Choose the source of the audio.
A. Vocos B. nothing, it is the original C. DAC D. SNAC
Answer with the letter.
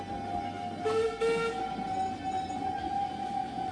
B